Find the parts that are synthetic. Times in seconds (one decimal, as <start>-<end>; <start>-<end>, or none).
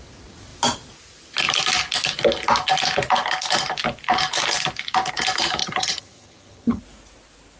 5.6-6.8